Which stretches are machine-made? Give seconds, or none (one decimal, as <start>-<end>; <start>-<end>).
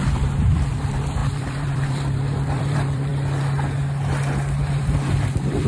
0.0-3.1; 4.6-5.7